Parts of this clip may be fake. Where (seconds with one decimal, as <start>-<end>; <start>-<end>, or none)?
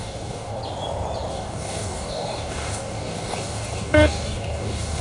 0.0-0.6; 1.3-5.0